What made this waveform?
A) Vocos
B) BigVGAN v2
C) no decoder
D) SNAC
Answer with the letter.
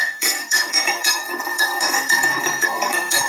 D